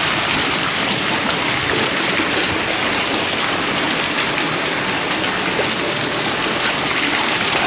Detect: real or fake real